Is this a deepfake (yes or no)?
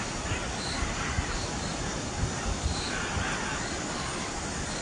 no